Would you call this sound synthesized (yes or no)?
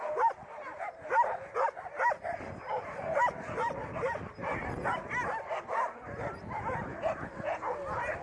no